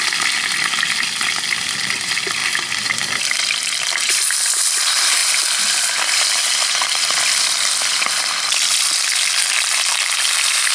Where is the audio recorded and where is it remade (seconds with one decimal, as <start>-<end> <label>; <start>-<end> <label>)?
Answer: 0.0-10.7 recorded